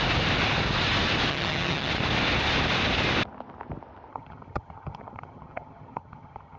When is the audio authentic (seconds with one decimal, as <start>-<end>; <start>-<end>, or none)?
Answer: 0.0-1.3; 1.9-4.1